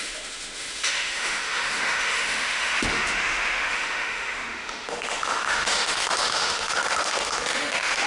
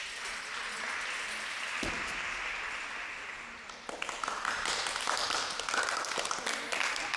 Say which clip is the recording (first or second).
second